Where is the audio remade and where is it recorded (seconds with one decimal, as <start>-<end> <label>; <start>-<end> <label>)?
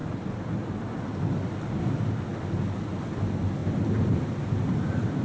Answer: 0.0-5.2 recorded